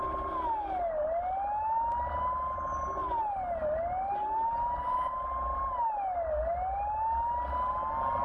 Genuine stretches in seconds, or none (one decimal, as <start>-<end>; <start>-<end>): 0.0-8.2